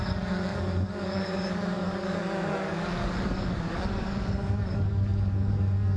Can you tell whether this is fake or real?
fake